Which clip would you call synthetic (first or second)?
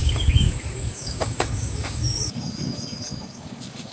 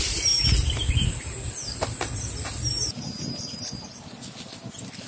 first